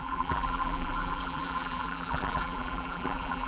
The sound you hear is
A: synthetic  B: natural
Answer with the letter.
A